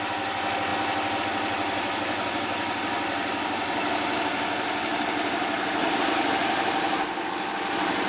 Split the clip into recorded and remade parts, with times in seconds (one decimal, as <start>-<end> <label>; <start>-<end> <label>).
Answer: 0.0-8.1 recorded